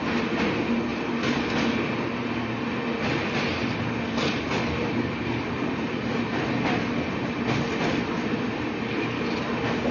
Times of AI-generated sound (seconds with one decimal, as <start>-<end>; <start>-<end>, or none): none